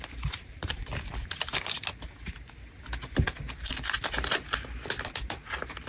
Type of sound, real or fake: real